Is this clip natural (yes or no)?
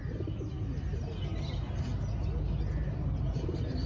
yes